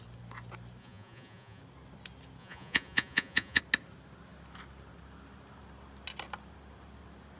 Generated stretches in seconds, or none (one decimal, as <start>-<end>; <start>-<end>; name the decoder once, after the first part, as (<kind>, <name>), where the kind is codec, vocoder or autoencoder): 0.8-1.6 (vocoder, Vocos); 2.4-3.6

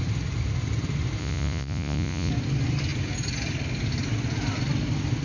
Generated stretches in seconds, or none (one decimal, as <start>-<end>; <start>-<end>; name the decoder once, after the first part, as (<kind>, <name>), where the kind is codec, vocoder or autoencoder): 1.2-2.3 (vocoder, Vocos)

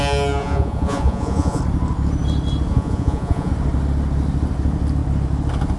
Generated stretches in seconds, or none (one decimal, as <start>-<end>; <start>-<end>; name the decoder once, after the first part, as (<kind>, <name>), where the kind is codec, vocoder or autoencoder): 0.4-1.6 (vocoder, Vocos); 2.7-3.5